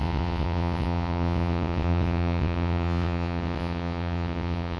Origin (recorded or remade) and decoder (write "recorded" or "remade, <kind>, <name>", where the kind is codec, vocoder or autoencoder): remade, vocoder, WaveNeXt